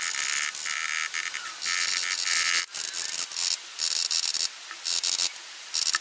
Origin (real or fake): real